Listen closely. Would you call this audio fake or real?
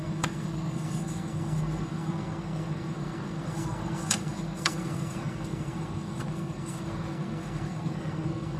fake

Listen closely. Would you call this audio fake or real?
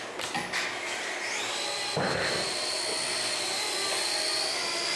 real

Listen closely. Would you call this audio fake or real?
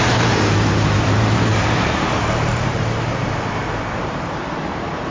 fake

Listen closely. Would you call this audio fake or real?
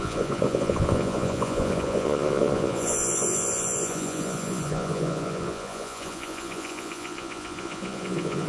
fake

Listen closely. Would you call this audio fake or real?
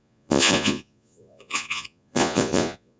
fake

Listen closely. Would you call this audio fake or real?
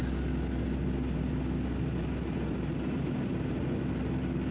real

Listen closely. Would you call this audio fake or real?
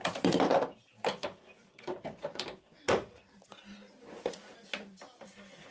real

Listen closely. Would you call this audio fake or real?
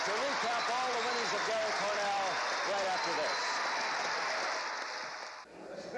real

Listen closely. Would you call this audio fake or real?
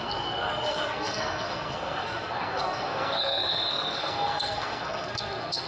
fake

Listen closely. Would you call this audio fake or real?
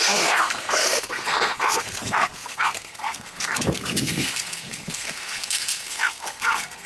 fake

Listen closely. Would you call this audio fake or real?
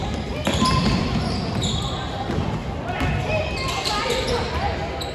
real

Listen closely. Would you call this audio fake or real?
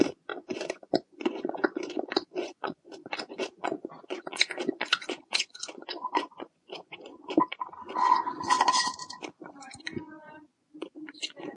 fake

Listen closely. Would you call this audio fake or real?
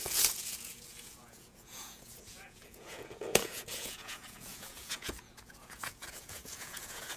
fake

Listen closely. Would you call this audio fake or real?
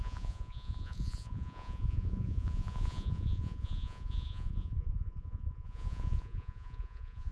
fake